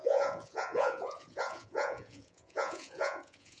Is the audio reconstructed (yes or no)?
yes